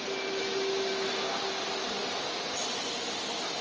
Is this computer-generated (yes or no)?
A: no